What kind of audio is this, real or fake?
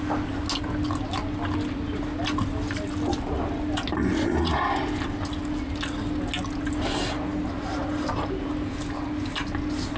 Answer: real